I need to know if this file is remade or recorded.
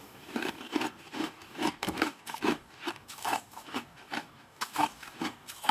remade